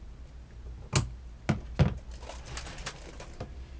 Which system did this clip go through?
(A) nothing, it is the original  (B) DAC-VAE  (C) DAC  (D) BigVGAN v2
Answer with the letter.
A